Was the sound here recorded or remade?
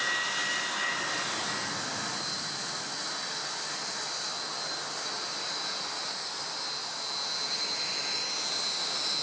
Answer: recorded